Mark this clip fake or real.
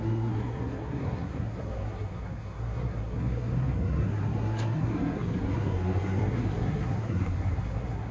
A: fake